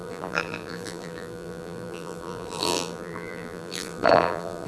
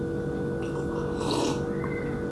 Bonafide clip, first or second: second